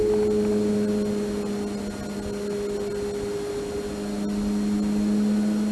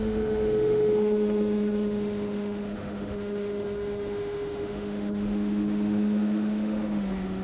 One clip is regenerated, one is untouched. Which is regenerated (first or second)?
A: second